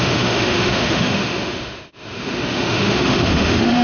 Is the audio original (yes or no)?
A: no